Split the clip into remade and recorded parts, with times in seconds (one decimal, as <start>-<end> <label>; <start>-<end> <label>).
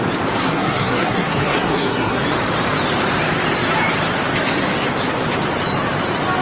0.0-0.4 recorded; 0.4-2.2 remade; 2.2-6.4 recorded